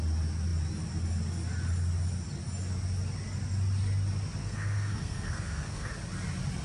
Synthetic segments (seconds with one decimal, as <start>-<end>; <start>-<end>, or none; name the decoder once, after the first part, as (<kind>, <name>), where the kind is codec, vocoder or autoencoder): 4.4-5.9 (codec, SNAC)